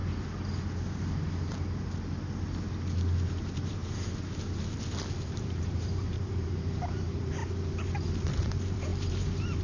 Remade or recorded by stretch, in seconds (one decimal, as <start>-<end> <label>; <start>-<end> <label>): 0.0-3.3 recorded; 3.3-3.8 remade; 3.8-5.2 recorded; 5.2-7.4 remade; 7.4-8.2 recorded; 8.2-9.6 remade